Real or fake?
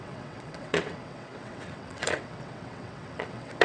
fake